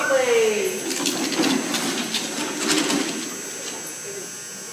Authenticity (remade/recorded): recorded